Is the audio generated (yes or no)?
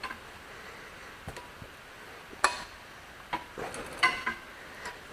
no